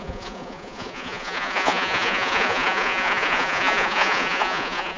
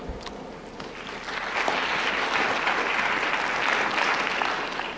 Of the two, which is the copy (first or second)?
first